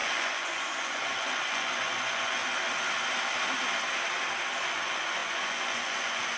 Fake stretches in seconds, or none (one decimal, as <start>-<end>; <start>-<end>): 0.0-2.4; 4.6-6.4